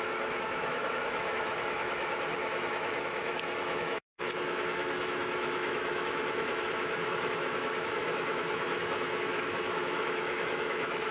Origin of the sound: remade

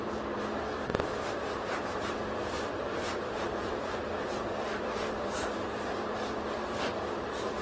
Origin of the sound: remade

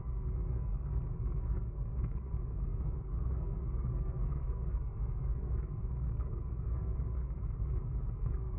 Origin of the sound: remade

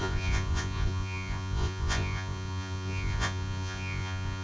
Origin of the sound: remade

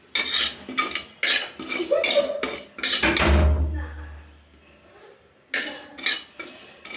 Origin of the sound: recorded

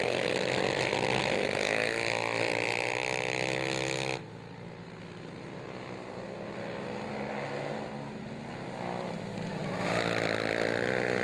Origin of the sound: recorded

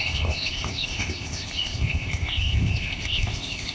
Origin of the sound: remade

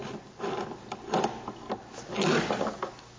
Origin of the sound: recorded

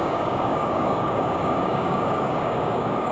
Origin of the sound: remade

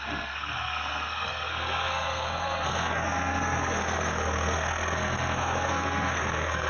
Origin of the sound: remade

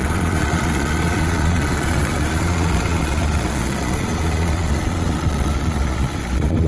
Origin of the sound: remade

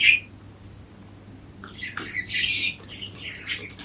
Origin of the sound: recorded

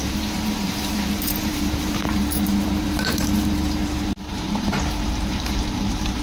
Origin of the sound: remade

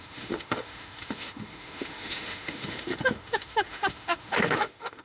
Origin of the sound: remade